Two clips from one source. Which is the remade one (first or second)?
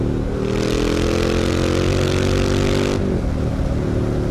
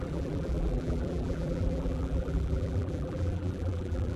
second